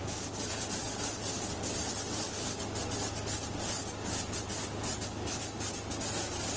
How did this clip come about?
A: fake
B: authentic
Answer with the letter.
B